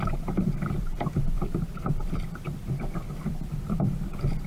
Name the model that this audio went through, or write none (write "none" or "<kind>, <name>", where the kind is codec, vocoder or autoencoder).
vocoder, BigVGAN v2